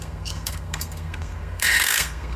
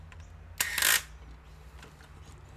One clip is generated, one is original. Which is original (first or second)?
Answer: second